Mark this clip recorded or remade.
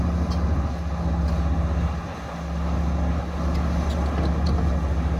recorded